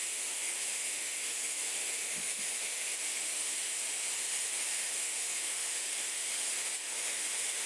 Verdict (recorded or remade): remade